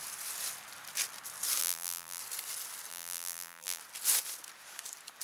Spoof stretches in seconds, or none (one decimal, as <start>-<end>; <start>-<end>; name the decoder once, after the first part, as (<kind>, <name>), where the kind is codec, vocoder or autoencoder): 1.6-2.2 (vocoder, BigVGAN v2); 2.9-3.8